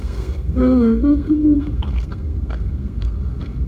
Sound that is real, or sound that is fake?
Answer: fake